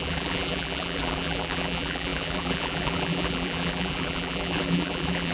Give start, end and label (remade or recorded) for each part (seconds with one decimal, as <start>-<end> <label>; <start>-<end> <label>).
0.0-5.3 remade